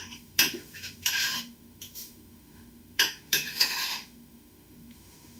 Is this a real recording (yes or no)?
no